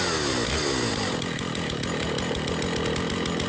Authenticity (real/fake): real